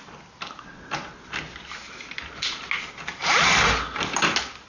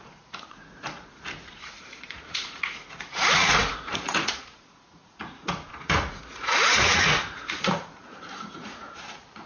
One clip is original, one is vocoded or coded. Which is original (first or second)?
first